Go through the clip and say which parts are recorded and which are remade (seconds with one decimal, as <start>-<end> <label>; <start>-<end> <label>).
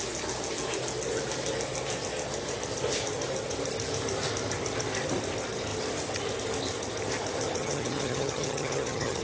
0.0-7.6 recorded; 7.6-9.2 remade